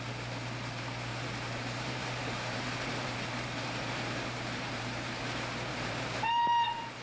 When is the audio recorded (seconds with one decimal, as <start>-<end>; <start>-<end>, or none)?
0.0-1.1; 5.2-5.7; 6.4-7.0